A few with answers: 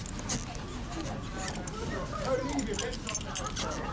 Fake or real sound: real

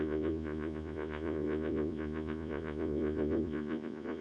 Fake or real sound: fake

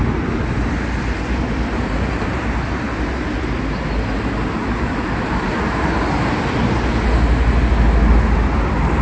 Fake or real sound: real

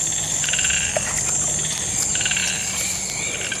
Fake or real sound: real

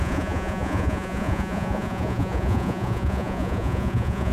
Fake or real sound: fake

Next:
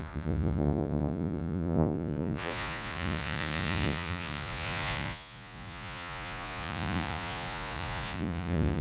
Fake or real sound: fake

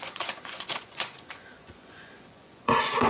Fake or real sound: fake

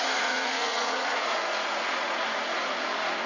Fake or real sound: fake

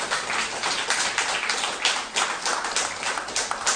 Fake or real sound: real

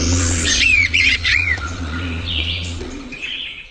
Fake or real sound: fake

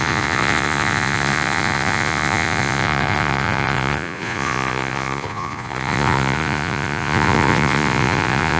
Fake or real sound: fake